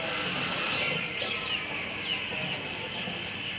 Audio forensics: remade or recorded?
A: recorded